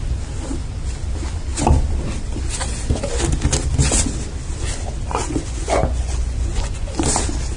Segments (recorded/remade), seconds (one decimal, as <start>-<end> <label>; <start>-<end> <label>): 0.0-5.2 recorded; 5.2-6.9 remade; 6.9-7.6 recorded